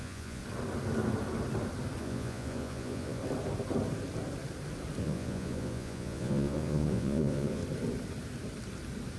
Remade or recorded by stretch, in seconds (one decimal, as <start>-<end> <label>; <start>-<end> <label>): 0.0-0.4 remade; 0.4-2.0 recorded; 2.0-3.2 remade; 3.2-5.0 recorded; 5.0-7.6 remade; 7.6-9.2 recorded